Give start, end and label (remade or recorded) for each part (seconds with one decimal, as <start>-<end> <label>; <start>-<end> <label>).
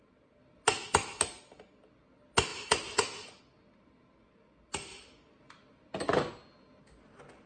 0.0-7.5 recorded